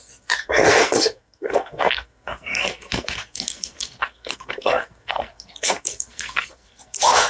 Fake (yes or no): yes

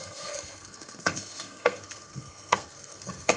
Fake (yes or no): yes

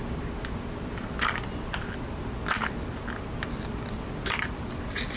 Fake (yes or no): no